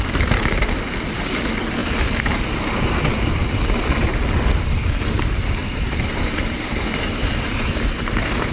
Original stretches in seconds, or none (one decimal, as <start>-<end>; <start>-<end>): 0.0-5.6